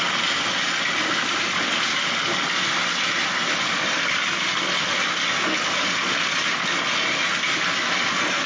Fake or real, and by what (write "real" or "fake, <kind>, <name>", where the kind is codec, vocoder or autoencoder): real